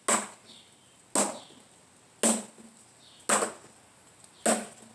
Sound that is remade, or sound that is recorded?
recorded